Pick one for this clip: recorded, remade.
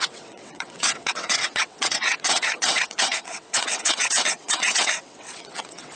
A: remade